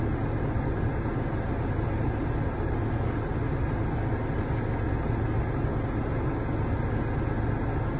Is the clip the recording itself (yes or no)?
yes